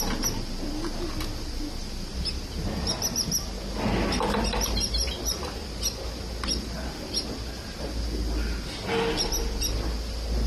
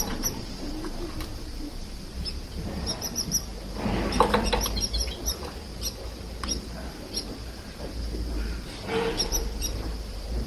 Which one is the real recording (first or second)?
first